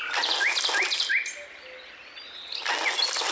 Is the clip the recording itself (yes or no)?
yes